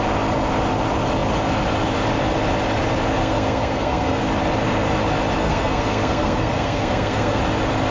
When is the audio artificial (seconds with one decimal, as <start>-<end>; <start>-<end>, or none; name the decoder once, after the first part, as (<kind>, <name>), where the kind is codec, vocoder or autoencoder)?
3.2-4.2 (codec, SNAC); 5.4-7.4